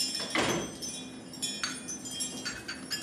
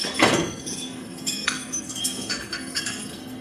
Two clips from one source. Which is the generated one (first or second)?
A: second